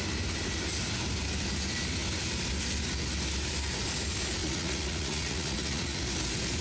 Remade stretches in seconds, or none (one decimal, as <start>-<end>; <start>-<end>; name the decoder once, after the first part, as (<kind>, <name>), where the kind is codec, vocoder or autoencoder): 4.4-6.0 (vocoder, Vocos)